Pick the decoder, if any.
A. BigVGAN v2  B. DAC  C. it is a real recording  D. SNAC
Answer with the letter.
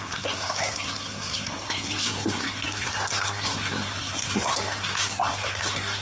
D